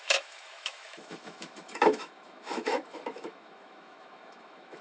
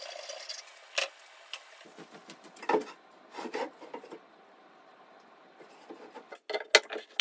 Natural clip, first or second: second